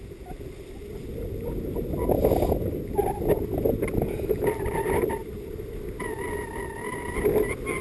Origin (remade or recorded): recorded